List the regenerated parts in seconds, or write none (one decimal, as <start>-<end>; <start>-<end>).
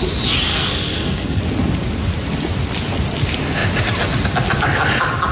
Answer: 0.5-1.4